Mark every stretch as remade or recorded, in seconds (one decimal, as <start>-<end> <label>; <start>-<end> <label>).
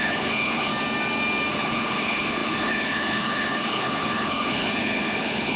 0.0-0.7 remade; 0.7-1.5 recorded; 1.5-5.6 remade